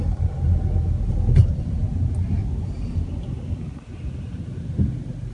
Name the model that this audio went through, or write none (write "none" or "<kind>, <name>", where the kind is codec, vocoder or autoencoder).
none